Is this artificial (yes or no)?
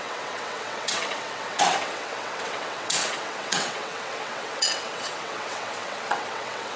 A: yes